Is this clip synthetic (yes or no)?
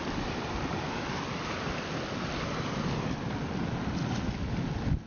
no